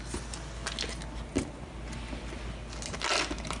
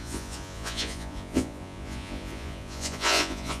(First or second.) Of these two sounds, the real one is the first